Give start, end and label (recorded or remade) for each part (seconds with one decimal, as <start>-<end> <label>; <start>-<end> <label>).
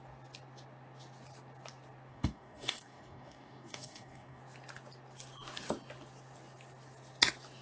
0.0-2.1 recorded; 2.1-4.4 remade; 4.4-7.6 recorded